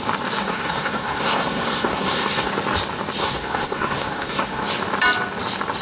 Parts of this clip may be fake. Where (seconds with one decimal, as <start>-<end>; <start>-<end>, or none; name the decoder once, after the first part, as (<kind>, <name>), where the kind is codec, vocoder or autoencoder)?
0.4-2.5 (codec, SNAC); 3.2-4.7